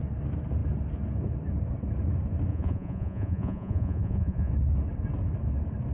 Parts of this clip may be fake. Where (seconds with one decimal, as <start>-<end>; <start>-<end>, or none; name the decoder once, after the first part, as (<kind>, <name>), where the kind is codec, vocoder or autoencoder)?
2.5-4.5 (vocoder, Vocos)